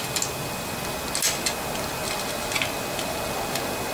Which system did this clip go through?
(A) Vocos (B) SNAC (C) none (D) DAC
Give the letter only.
C